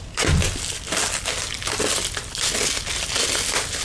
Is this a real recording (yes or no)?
yes